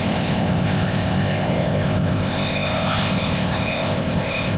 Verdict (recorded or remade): remade